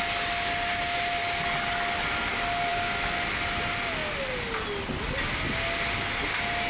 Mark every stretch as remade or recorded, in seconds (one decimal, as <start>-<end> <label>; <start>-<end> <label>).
0.0-6.7 recorded